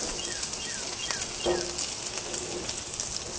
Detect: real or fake real